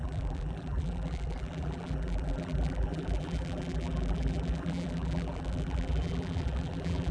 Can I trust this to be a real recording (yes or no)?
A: no